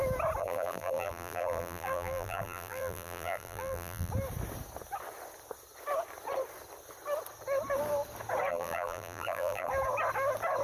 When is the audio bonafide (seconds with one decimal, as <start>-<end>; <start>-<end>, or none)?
0.0-0.4; 4.1-8.5; 9.7-10.6